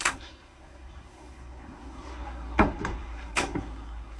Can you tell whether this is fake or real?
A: fake